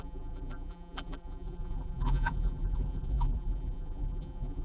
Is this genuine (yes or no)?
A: no